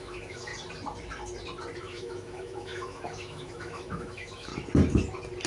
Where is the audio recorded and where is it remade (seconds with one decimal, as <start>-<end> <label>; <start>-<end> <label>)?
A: 0.0-0.5 remade; 0.5-1.8 recorded; 1.8-4.5 remade; 4.5-5.5 recorded